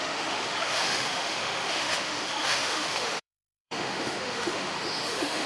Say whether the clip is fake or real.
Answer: fake